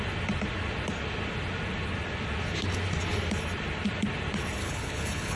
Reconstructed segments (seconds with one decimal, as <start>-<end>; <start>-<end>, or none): 4.6-5.4